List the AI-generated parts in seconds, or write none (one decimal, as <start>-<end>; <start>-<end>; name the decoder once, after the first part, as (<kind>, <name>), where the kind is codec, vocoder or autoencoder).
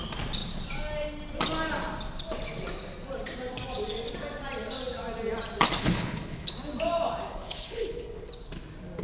5.8-6.5 (codec, HILCodec); 7.3-8.3